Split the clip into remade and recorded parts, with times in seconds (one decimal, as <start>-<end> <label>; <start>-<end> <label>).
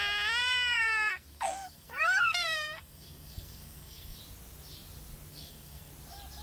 0.0-0.4 recorded; 0.4-4.2 remade; 4.2-5.3 recorded; 5.3-5.9 remade; 5.9-6.4 recorded